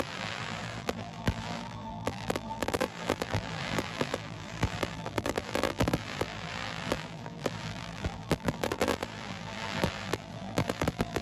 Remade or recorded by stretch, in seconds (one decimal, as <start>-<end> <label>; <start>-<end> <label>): 0.0-11.2 remade